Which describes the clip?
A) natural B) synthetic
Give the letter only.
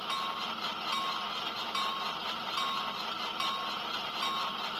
A